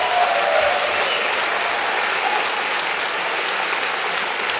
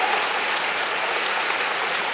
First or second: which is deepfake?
second